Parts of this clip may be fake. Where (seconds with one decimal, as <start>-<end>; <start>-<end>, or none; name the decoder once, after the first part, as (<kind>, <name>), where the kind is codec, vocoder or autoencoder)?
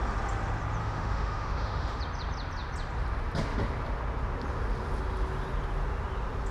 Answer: 0.8-2.0 (autoencoder, DAC-VAE)